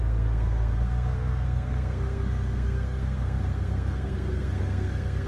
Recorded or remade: remade